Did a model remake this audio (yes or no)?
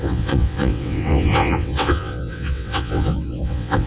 yes